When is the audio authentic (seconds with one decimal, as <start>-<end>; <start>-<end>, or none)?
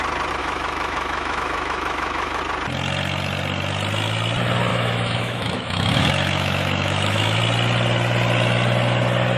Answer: 0.0-0.4; 2.4-4.7; 7.4-9.4